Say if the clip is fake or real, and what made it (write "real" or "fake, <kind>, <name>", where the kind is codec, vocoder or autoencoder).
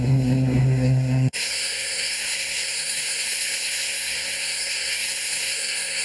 fake, codec, SNAC